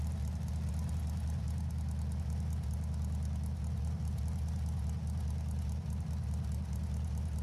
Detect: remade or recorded recorded